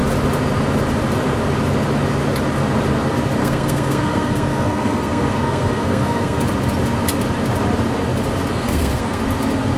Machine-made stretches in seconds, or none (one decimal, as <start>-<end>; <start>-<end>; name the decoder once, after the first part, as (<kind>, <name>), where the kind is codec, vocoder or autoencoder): 3.4-6.4 (codec, SNAC); 8.5-9.2